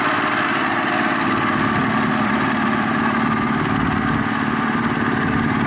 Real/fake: fake